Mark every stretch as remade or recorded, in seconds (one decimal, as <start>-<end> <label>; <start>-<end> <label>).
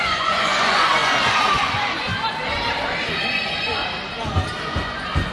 0.0-2.1 remade; 2.1-2.8 recorded; 2.8-3.8 remade; 3.8-4.6 recorded; 4.6-5.3 remade